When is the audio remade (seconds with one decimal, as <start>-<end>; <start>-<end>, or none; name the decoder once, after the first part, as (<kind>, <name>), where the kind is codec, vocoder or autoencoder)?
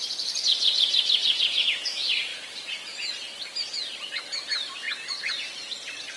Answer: 2.3-6.2 (vocoder, BigVGAN v2)